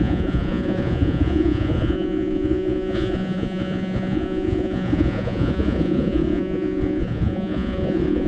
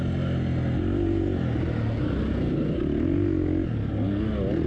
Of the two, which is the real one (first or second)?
second